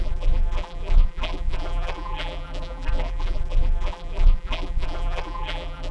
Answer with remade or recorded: remade